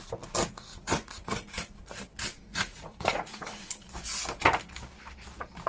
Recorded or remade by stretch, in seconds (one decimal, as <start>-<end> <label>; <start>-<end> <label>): 0.0-0.7 recorded; 0.7-1.7 remade; 1.7-2.5 recorded; 2.5-3.7 remade; 3.7-5.7 recorded

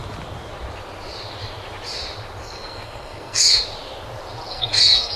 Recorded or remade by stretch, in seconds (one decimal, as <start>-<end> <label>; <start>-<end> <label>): 0.0-2.4 recorded; 2.4-3.6 remade; 3.6-4.5 recorded; 4.5-5.2 remade

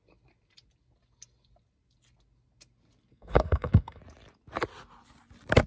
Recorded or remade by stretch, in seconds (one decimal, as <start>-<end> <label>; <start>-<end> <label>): 0.0-3.1 recorded; 3.1-4.0 remade; 4.0-5.7 recorded

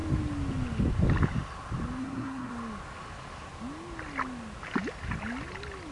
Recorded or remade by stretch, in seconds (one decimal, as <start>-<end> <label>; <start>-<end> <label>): 0.0-2.0 recorded; 2.0-2.5 remade; 2.5-5.9 recorded

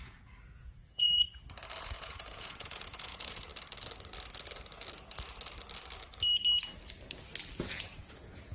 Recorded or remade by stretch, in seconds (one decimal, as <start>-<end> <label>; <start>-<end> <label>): 0.0-1.3 remade; 1.3-1.8 recorded; 1.8-3.5 remade; 3.5-7.8 recorded; 7.8-8.5 remade

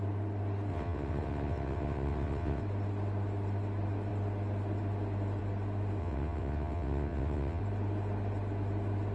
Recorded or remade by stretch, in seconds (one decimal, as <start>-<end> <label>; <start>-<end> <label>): 0.0-0.7 recorded; 0.7-2.6 remade; 2.6-6.0 recorded; 6.0-7.6 remade; 7.6-9.1 recorded